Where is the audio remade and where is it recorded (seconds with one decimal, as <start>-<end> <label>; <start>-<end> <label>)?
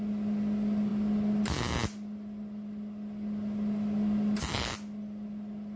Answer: 0.0-5.8 recorded